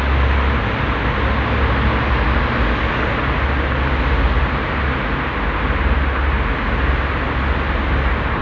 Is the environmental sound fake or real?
real